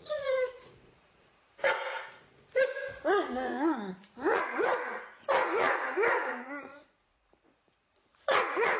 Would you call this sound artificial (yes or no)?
yes